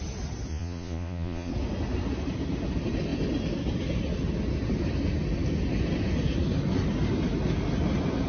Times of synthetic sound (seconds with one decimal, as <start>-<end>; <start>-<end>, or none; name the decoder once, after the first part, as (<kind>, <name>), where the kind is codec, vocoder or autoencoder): 0.5-1.5 (vocoder, Vocos)